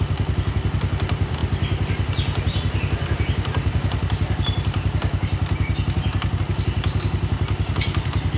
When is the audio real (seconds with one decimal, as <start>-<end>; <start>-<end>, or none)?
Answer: 0.0-8.4